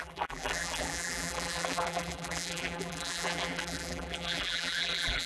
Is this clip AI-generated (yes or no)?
yes